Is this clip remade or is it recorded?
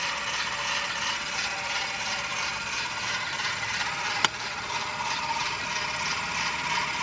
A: recorded